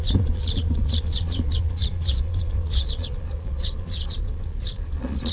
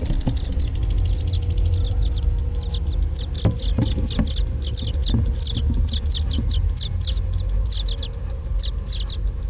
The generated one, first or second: first